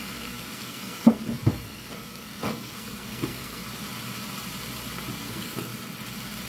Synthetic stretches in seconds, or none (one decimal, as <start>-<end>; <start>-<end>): 0.0-3.6; 5.2-5.7